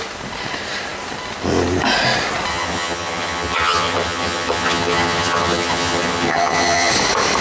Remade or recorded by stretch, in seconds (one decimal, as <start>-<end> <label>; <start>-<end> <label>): 0.0-2.5 recorded; 2.5-6.9 remade; 6.9-7.4 recorded